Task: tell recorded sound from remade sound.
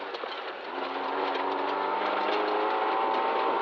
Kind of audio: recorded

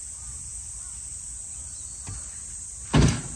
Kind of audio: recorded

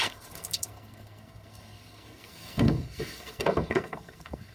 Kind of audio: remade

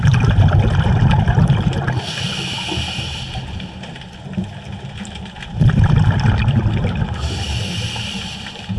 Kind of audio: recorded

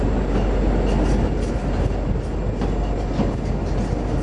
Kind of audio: recorded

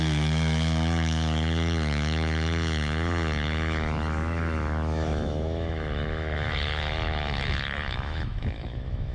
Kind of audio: remade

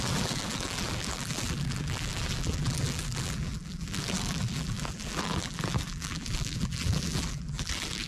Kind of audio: remade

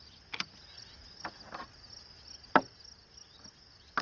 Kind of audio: recorded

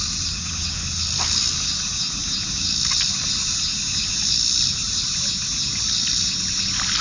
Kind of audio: recorded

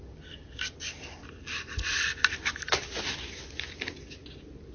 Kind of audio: recorded